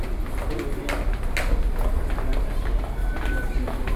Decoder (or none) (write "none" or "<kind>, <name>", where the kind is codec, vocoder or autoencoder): none